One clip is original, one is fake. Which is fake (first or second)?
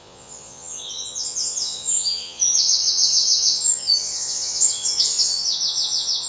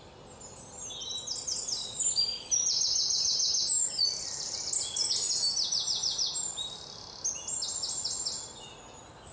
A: first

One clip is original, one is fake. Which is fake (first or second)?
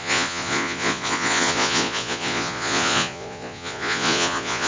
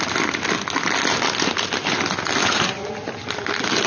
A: first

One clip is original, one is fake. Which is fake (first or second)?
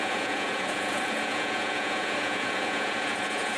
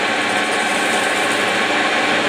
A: first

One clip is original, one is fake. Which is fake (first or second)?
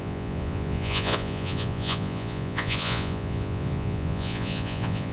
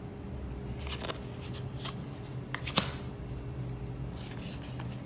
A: first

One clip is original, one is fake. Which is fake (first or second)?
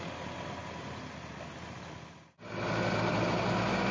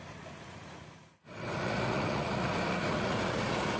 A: second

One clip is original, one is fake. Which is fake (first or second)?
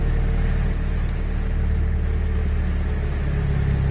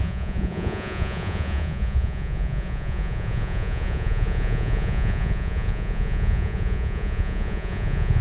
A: second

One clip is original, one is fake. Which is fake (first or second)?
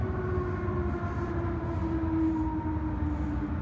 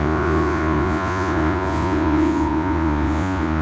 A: second